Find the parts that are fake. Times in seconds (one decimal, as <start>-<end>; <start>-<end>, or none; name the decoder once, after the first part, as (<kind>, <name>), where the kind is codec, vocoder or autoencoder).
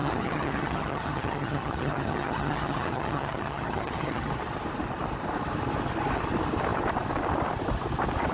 0.0-4.3 (vocoder, HiFi-GAN)